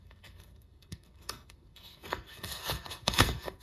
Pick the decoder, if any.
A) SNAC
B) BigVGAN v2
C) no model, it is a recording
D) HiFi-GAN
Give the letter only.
A